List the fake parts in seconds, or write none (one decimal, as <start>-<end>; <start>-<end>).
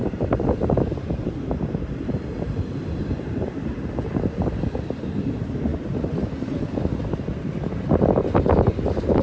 0.0-5.7; 6.6-9.2